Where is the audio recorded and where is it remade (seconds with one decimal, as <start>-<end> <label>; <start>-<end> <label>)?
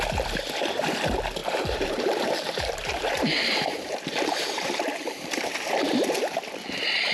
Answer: 0.0-1.4 recorded; 1.4-5.7 remade; 5.7-7.1 recorded